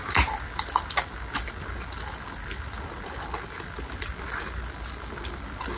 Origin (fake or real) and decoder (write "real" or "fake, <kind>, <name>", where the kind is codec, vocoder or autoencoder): real